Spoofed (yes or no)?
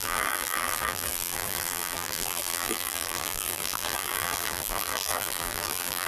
yes